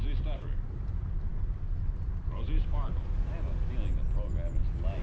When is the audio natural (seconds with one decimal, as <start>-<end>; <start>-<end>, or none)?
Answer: 0.0-5.0